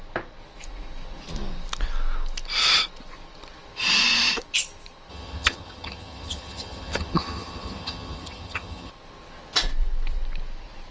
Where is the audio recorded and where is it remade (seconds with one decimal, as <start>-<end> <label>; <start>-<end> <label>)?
0.0-5.1 recorded; 5.1-8.9 remade; 8.9-10.9 recorded